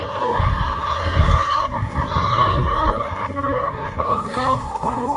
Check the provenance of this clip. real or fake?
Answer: fake